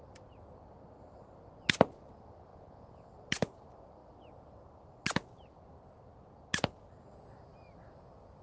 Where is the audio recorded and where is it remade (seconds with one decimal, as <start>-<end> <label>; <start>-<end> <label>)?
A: 0.0-2.5 recorded; 2.5-3.1 remade; 3.1-8.4 recorded

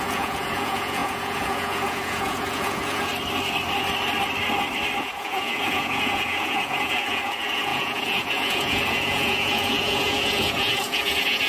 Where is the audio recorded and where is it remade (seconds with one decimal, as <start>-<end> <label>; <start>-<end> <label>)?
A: 0.0-3.1 remade; 3.1-5.0 recorded; 5.0-11.5 remade

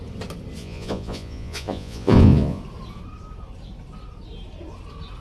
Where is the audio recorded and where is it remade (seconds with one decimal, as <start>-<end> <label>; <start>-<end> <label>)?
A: 0.0-0.6 recorded; 0.6-2.6 remade; 2.6-5.2 recorded

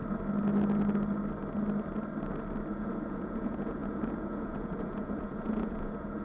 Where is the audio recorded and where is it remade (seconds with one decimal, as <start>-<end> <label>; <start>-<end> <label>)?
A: 0.0-2.7 recorded; 2.7-6.2 remade

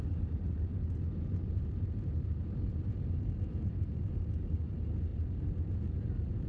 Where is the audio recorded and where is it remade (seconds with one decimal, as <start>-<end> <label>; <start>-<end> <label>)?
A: 0.0-6.5 recorded

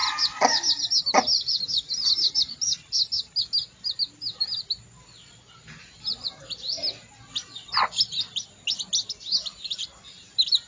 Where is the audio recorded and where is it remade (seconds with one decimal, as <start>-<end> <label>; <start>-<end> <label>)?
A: 0.0-10.7 recorded